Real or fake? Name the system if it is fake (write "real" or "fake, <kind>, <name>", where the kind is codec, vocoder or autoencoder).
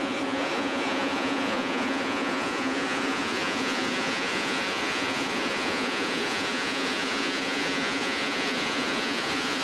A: fake, vocoder, Vocos